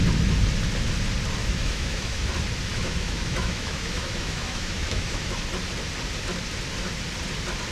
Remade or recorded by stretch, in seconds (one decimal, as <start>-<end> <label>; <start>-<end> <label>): 0.0-1.4 recorded; 1.4-2.2 remade; 2.2-2.7 recorded; 2.7-5.4 remade; 5.4-7.7 recorded